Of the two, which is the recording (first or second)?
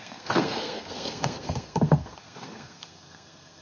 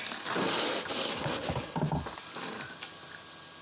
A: second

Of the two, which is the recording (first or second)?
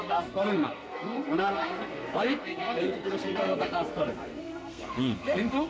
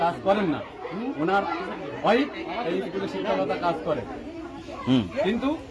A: second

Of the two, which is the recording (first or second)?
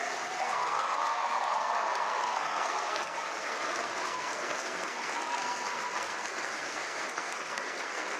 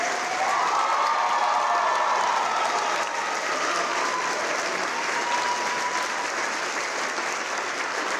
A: second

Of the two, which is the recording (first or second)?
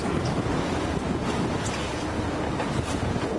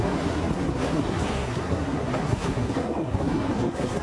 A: first